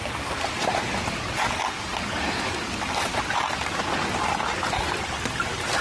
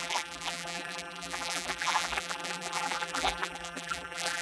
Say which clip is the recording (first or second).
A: first